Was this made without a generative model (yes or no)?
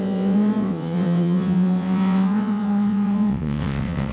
no